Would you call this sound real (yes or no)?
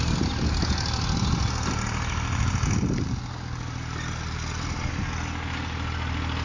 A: yes